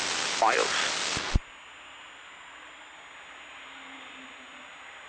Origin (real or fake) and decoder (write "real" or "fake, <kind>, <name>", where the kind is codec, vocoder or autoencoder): real